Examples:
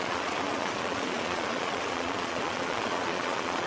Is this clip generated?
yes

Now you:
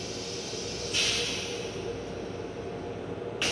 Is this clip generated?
no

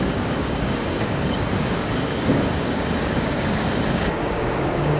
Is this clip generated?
yes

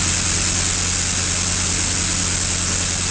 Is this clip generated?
no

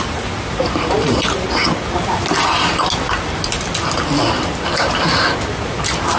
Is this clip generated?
no